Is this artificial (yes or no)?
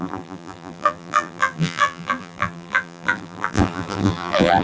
yes